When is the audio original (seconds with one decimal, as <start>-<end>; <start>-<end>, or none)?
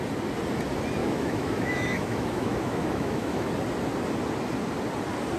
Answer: 0.0-1.0; 3.5-5.4